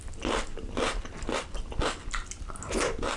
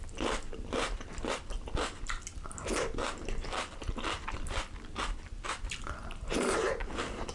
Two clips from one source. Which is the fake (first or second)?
second